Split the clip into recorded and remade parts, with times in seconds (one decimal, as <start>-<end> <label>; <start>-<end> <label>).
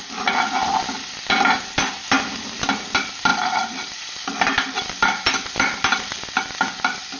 0.0-7.2 recorded